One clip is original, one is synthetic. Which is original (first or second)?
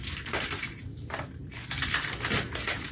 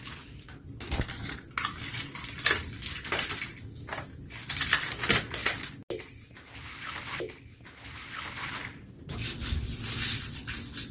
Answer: second